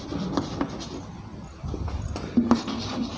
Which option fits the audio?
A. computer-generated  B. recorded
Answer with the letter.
B